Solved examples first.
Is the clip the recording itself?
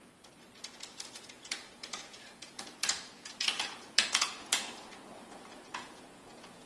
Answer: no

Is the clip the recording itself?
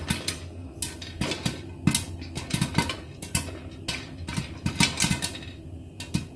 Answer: yes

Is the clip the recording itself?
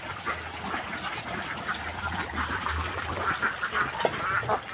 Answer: yes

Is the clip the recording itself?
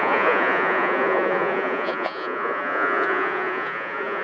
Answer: no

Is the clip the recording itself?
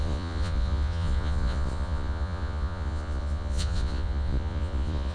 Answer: no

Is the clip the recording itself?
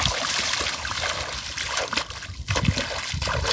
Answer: yes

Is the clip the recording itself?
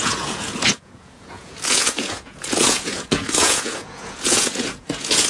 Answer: no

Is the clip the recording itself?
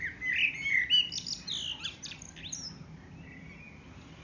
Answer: yes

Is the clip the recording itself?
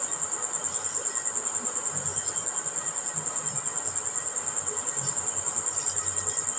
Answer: yes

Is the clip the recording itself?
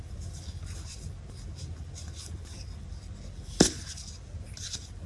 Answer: yes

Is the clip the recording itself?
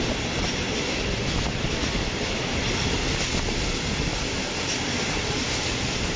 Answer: yes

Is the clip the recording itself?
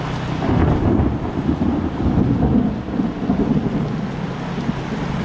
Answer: yes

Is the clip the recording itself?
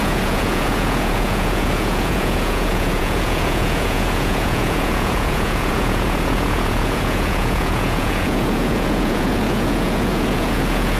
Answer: no